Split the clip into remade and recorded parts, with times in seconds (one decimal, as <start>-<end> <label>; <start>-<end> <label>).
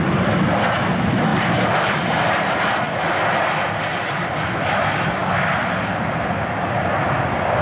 0.0-7.6 recorded